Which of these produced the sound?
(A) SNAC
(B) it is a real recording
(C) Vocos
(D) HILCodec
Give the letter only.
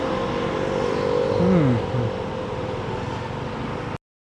B